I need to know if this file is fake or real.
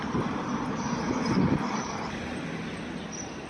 fake